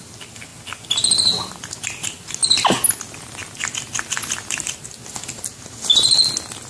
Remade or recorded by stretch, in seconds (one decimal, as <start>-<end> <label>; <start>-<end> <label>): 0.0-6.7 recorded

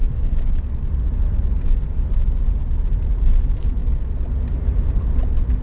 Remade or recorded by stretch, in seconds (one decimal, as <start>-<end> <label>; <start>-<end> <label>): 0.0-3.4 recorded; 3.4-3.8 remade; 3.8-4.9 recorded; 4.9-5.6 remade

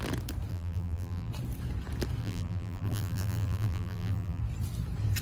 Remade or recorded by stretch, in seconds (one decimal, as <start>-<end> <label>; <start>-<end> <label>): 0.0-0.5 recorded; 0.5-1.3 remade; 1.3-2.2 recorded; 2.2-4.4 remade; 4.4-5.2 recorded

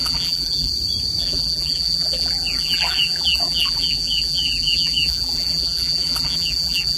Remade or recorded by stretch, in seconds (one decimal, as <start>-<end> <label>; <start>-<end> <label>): 0.0-0.7 remade; 0.7-1.2 recorded; 1.2-7.0 remade

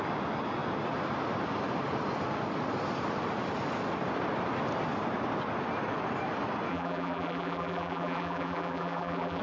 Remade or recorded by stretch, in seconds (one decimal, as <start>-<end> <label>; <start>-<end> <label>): 0.0-6.7 recorded; 6.7-9.4 remade